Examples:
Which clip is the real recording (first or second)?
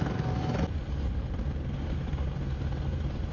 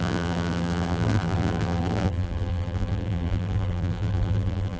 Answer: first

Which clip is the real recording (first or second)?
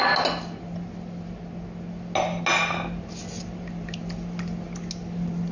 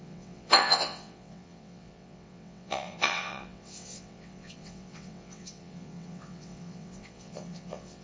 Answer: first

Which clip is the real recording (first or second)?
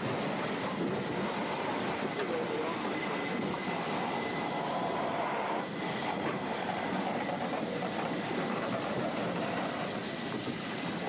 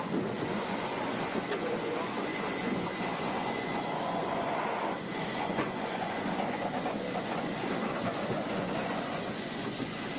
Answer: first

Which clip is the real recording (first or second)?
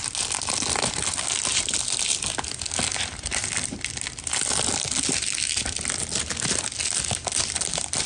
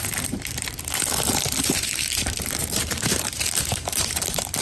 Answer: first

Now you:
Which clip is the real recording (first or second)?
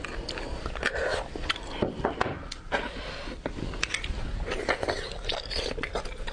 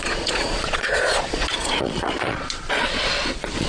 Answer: first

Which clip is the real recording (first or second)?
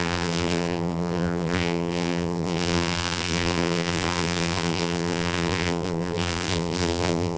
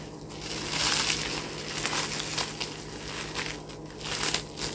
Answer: second